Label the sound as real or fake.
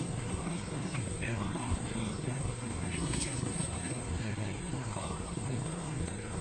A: fake